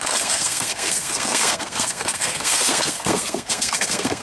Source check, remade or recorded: remade